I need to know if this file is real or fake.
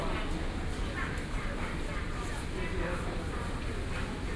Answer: real